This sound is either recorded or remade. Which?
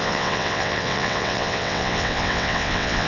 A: remade